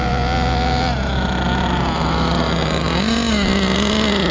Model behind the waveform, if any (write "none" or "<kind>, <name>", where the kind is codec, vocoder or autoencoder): none